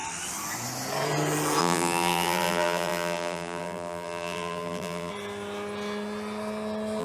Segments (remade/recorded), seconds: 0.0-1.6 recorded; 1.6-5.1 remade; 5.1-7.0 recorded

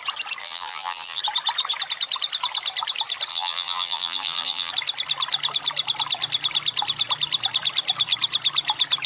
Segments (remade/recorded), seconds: 0.0-0.4 recorded; 0.4-1.2 remade; 1.2-3.3 recorded; 3.3-4.7 remade; 4.7-9.1 recorded

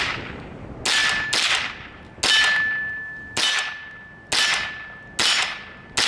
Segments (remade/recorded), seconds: 0.0-6.1 recorded

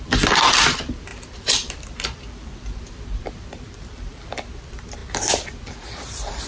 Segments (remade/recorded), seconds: 0.0-6.5 remade

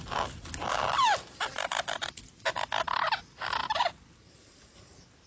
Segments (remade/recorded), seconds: 0.0-0.6 recorded; 0.6-2.1 remade; 2.1-3.6 recorded; 3.6-4.5 remade; 4.5-5.3 recorded

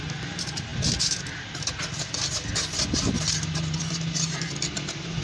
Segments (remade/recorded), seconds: 0.0-5.2 recorded

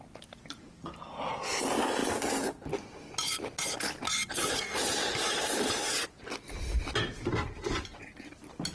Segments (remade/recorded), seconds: 0.0-8.7 recorded

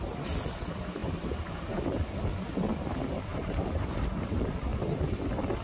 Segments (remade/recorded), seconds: 0.0-1.0 recorded; 1.0-1.8 remade; 1.8-3.3 recorded; 3.3-4.0 remade; 4.0-4.7 recorded; 4.7-5.6 remade